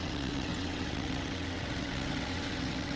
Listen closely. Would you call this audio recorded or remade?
remade